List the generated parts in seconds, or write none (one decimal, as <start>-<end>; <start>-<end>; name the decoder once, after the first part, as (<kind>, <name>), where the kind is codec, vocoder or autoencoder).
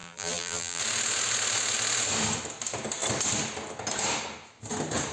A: 0.0-0.8 (vocoder, BigVGAN v2)